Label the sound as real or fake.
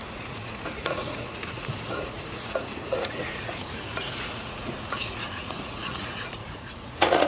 fake